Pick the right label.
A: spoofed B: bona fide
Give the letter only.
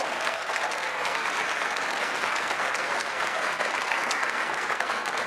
A